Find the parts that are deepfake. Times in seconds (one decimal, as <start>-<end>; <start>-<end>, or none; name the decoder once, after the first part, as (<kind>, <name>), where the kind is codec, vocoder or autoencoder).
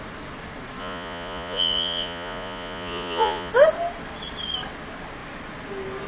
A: 0.8-3.5 (vocoder, Vocos)